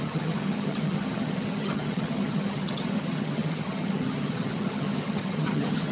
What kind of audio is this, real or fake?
fake